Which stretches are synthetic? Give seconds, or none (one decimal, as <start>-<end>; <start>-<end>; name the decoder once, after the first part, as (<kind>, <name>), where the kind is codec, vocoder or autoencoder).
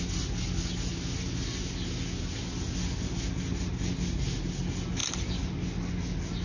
none